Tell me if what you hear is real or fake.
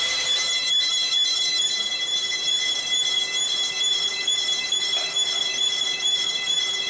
fake